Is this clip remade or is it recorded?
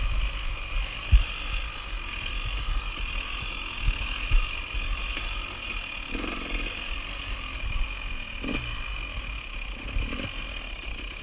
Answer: recorded